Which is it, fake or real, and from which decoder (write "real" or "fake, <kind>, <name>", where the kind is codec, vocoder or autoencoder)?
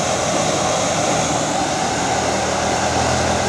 real